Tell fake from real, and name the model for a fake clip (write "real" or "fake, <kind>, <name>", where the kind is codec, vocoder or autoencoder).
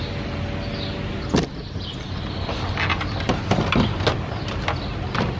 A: real